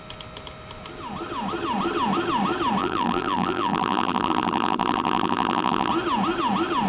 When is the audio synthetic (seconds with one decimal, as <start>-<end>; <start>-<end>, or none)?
2.8-5.9